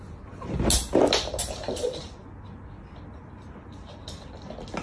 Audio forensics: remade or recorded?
recorded